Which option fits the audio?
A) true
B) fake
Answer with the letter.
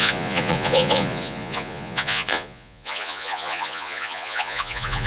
B